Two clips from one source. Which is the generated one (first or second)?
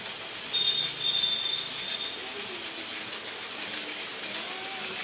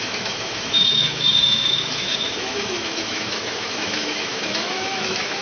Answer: second